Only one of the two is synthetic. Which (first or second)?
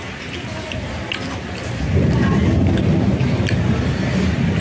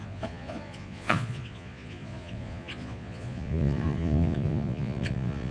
second